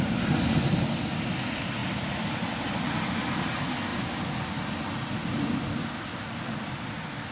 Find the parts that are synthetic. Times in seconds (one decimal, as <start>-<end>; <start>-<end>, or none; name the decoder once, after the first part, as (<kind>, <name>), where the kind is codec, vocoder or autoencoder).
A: none